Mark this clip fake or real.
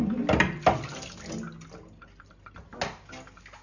real